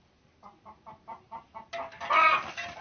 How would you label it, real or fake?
real